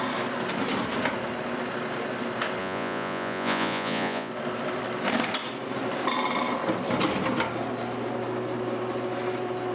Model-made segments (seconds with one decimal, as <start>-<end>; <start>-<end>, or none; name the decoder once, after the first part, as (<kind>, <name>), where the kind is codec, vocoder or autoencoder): 2.6-4.3 (vocoder, Vocos)